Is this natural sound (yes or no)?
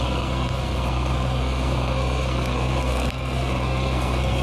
no